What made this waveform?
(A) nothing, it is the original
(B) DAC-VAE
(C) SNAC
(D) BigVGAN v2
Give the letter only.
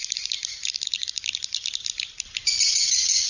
A